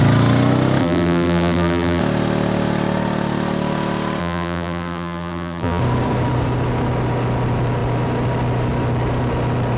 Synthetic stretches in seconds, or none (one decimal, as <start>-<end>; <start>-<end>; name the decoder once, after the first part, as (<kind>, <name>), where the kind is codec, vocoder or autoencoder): 0.8-2.0 (vocoder, BigVGAN v2); 4.2-5.8